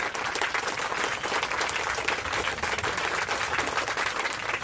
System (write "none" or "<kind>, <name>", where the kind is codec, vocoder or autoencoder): none